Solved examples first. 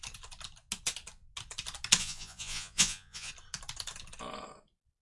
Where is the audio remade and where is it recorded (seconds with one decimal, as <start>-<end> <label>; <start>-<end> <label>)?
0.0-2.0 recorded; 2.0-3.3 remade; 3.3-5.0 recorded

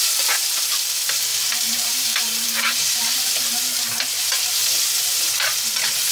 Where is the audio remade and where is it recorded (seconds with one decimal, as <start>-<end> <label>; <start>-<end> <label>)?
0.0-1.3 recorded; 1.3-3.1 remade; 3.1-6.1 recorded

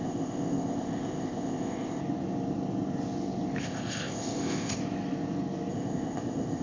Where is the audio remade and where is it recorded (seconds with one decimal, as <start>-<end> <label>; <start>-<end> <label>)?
0.0-2.0 remade; 2.0-3.6 recorded; 3.6-4.8 remade; 4.8-5.7 recorded; 5.7-6.6 remade